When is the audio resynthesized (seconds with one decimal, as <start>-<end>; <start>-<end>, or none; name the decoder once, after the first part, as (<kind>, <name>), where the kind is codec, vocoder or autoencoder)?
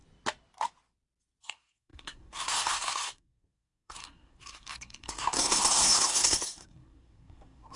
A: 1.4-7.8 (codec, SNAC)